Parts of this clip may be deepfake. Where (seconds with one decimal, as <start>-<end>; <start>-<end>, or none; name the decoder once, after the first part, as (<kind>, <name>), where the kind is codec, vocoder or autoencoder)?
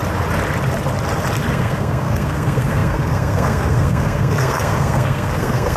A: 1.5-5.8 (codec, SNAC)